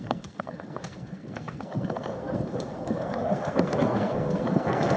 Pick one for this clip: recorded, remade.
remade